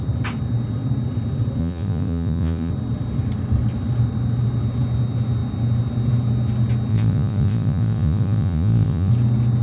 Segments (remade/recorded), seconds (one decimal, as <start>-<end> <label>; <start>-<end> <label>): 0.0-1.6 recorded; 1.6-2.7 remade; 2.7-6.9 recorded; 6.9-9.1 remade; 9.1-9.6 recorded